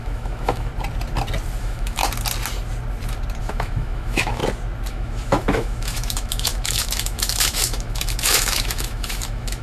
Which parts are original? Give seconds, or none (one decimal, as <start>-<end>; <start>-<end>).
0.7-1.6; 2.0-3.4; 4.4-4.9